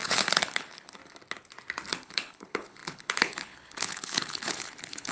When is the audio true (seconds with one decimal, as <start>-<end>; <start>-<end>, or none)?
1.0-1.9